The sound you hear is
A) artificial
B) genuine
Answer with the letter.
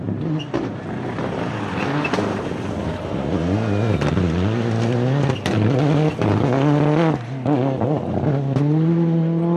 B